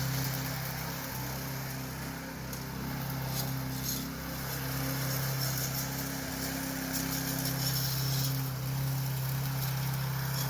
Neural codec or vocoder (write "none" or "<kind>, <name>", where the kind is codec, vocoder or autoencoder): none